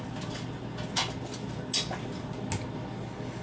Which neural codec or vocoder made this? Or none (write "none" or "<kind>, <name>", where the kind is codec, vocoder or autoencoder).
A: none